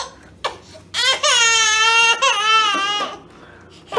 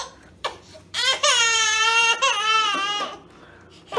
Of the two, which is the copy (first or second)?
second